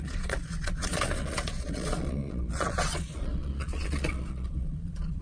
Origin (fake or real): fake